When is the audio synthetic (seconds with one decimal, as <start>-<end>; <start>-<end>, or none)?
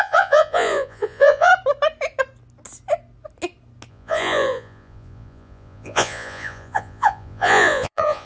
0.0-1.5; 3.9-8.3